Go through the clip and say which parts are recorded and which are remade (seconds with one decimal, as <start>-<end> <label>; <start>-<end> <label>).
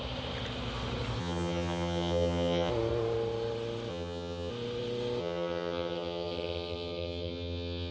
0.0-1.2 recorded; 1.2-2.7 remade; 2.7-3.9 recorded; 3.9-4.5 remade; 4.5-5.2 recorded; 5.2-7.9 remade